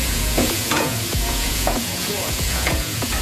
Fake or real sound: fake